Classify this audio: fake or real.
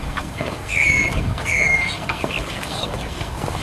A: fake